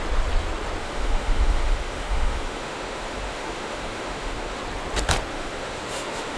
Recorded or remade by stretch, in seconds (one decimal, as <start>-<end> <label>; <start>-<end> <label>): 0.0-0.8 recorded; 0.8-4.6 remade; 4.6-5.3 recorded; 5.3-6.4 remade